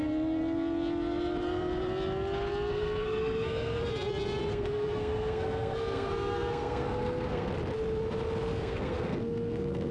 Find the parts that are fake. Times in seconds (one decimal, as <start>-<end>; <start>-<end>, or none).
2.7-3.8; 4.5-7.5; 8.5-9.9